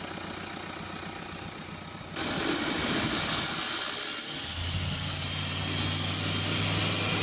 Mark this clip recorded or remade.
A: recorded